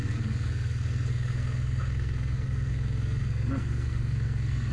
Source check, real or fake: fake